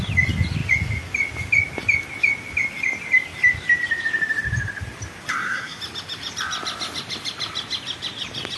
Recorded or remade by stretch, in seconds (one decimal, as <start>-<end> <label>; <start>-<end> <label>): 0.0-5.3 recorded; 5.3-5.8 remade; 5.8-8.6 recorded